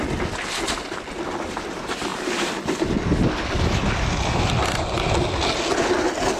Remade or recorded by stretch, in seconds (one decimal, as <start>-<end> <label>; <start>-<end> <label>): 0.0-6.4 recorded